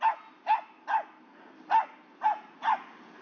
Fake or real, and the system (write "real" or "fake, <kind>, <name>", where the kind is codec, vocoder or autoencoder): real